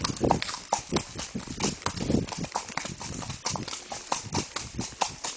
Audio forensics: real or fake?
real